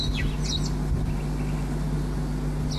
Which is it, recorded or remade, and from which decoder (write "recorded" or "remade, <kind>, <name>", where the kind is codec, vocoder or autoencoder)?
recorded